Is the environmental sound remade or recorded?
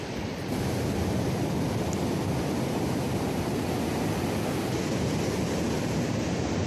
remade